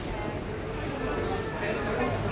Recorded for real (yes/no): yes